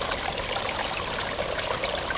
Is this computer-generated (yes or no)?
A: no